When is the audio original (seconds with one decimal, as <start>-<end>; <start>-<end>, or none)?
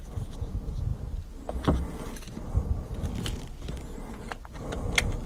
0.0-5.3